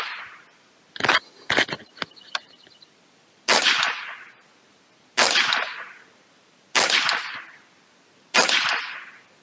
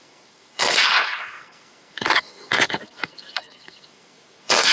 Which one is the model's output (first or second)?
second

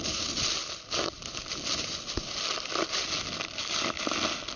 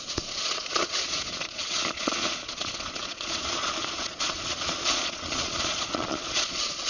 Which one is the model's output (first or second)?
second